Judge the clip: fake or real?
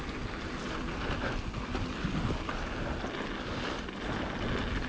real